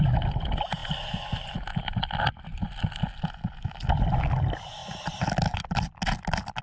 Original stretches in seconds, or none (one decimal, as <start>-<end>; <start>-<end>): 0.0-6.6